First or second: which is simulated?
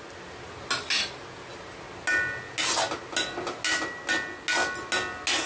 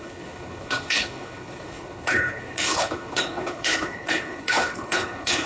second